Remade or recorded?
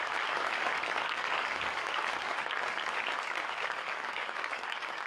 remade